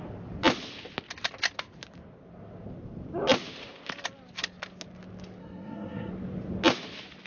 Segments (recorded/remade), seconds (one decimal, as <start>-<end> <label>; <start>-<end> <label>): 0.0-5.4 recorded; 5.4-6.1 remade; 6.1-7.3 recorded